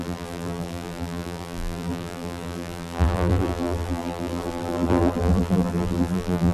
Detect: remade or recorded remade